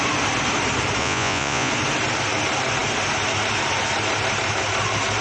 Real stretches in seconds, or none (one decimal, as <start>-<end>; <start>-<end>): 0.0-1.0; 1.7-5.2